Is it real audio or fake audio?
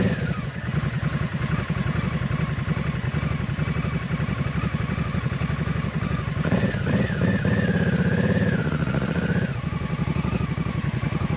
fake